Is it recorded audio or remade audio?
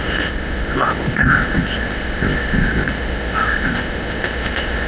remade